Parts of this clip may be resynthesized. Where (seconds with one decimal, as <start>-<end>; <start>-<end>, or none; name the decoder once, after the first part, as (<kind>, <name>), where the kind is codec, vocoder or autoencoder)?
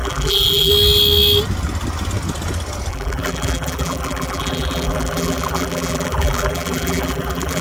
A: 0.0-0.7 (vocoder, BigVGAN v2); 2.9-7.6